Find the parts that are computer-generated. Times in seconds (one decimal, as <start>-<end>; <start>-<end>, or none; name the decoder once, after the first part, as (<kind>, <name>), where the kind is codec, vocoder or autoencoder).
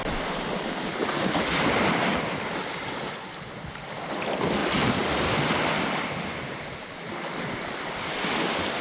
0.0-4.6 (vocoder, BigVGAN v2); 6.4-8.8